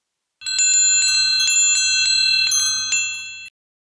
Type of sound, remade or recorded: recorded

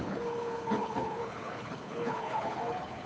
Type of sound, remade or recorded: remade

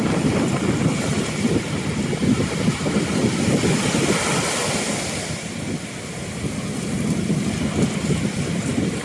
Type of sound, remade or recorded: recorded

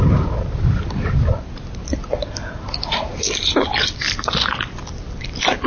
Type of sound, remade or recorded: recorded